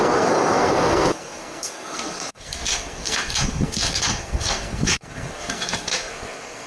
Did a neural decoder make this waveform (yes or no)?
yes